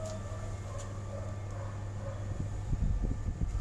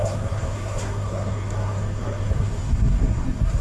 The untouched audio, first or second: first